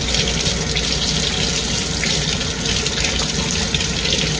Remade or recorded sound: recorded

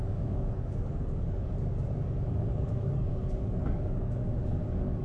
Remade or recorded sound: remade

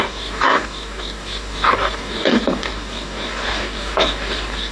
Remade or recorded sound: remade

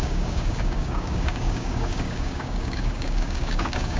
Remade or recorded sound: remade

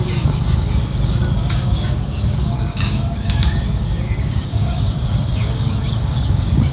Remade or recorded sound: remade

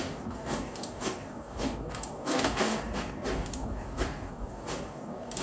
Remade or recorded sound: remade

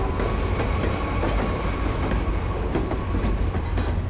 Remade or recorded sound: recorded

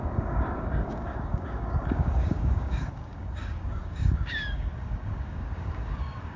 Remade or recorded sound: remade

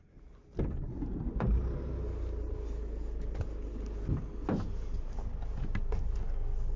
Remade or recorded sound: recorded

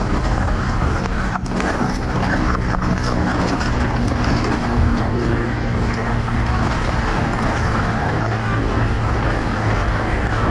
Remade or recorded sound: remade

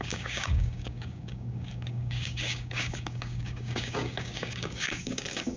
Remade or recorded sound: remade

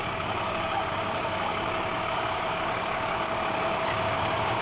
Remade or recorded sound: remade